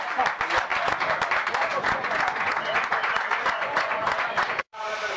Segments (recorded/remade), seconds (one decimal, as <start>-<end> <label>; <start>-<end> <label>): 0.0-1.7 recorded; 1.7-4.8 remade; 4.8-5.2 recorded